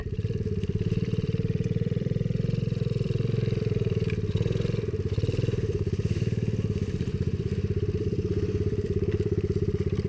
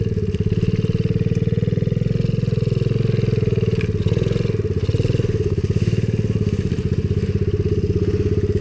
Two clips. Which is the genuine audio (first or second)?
second